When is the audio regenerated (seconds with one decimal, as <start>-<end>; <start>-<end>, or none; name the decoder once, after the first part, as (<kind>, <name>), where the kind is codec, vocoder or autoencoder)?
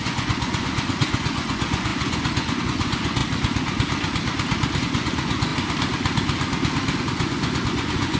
0.0-3.2 (vocoder, Vocos); 4.8-5.5; 7.0-8.2